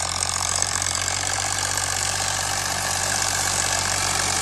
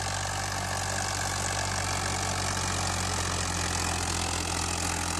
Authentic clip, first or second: second